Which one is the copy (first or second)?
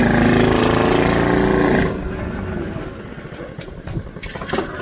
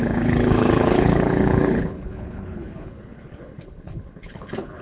second